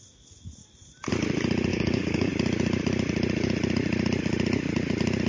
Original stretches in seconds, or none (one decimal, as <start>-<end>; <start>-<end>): 0.0-1.7; 2.3-5.3